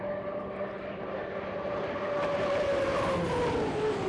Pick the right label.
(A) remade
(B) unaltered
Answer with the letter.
B